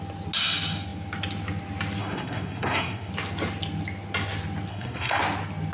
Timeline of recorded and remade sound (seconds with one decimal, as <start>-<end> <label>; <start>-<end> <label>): 0.0-2.0 recorded; 2.0-3.1 remade; 3.1-4.7 recorded; 4.7-5.2 remade; 5.2-5.7 recorded